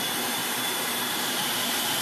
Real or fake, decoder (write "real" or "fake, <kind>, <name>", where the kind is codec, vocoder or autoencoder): fake, vocoder, BigVGAN v2